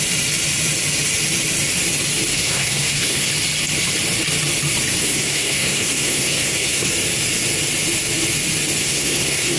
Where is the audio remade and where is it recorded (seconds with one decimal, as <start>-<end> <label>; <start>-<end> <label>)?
0.0-2.3 recorded; 2.3-3.3 remade; 3.3-5.0 recorded; 5.0-6.9 remade; 6.9-8.8 recorded; 8.8-9.6 remade